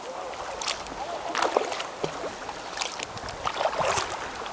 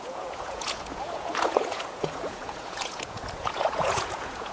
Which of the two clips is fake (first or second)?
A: second